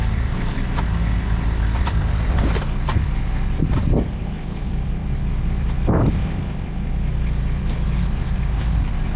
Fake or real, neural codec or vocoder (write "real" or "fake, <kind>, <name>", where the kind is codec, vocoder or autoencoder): fake, vocoder, BigVGAN v2